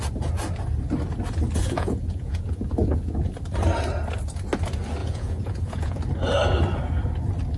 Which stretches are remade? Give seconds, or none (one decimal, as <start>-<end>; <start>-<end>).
1.6-3.2; 5.0-6.0